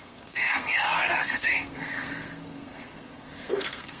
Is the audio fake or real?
fake